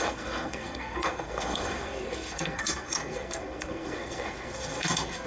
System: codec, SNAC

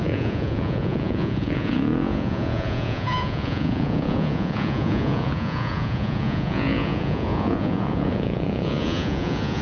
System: vocoder, Vocos